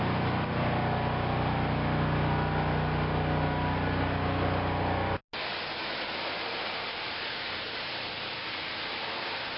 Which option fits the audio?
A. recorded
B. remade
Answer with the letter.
A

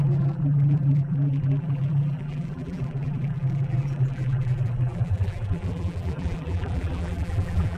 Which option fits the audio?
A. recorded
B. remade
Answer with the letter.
B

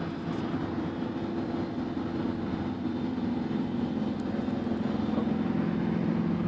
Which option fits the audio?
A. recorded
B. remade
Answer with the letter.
A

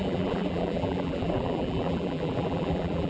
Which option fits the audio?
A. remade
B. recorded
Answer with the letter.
A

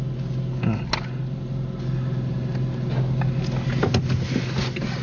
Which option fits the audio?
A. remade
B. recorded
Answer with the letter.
B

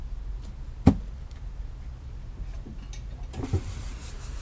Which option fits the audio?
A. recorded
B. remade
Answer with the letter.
A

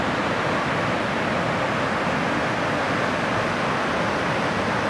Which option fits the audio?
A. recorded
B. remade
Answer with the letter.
A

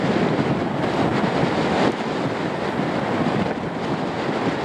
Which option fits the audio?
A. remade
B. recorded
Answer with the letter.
B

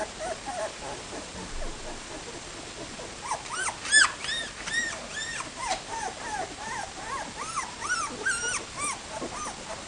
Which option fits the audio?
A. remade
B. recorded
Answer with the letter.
B